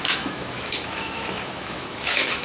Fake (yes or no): yes